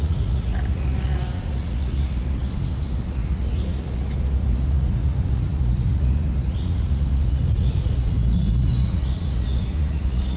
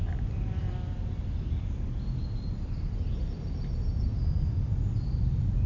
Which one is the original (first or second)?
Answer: second